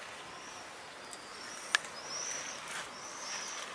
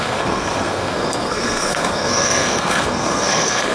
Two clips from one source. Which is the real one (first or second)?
first